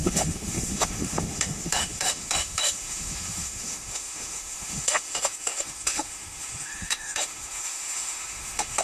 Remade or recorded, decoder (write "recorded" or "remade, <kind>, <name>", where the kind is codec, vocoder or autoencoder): remade, autoencoder, DAC-VAE